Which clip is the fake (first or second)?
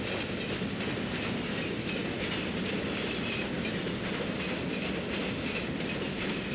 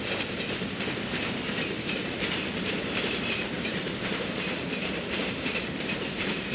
second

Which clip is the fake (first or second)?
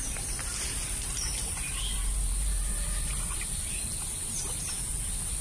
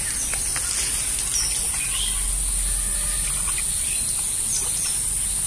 first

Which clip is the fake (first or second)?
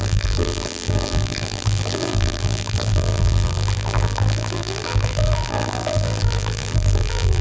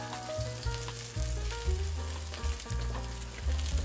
first